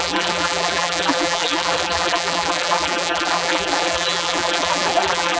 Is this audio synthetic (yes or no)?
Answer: yes